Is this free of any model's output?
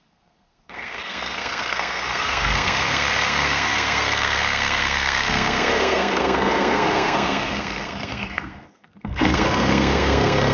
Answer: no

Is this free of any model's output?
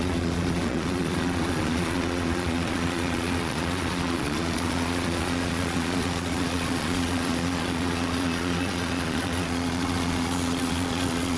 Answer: no